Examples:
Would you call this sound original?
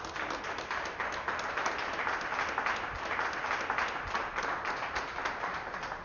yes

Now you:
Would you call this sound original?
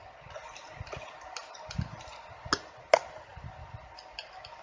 yes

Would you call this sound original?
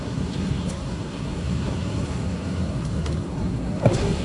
no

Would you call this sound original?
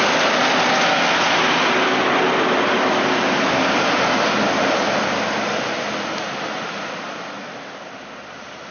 yes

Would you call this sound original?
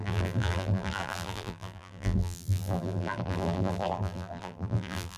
no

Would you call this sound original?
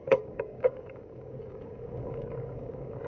no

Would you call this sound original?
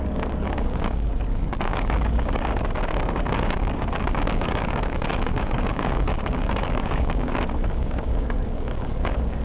no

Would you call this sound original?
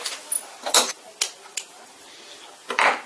yes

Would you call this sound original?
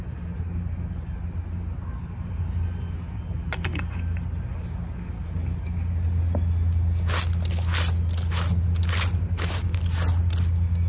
yes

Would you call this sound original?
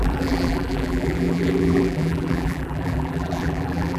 no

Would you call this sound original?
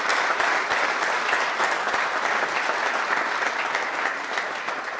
yes